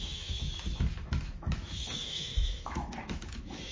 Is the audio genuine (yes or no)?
no